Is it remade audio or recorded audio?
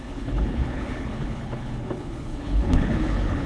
remade